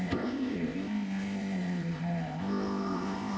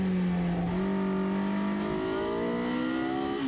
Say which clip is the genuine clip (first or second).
second